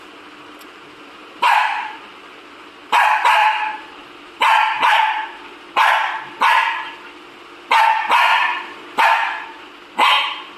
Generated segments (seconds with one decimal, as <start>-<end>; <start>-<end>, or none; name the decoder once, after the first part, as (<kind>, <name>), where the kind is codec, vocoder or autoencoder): 1.2-2.4 (vocoder, BigVGAN v2); 3.4-7.6; 8.3-9.0